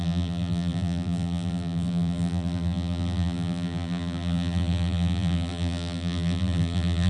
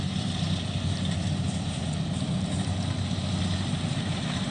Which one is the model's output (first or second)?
first